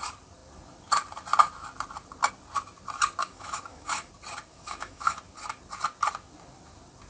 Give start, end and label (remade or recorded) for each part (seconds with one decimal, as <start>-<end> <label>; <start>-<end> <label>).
0.0-3.2 recorded; 3.2-4.1 remade; 4.1-4.5 recorded; 4.5-5.2 remade; 5.2-7.1 recorded